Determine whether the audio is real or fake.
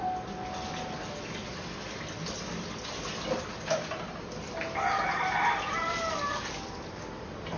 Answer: real